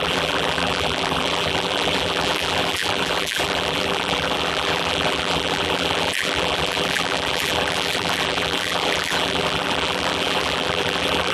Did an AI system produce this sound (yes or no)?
yes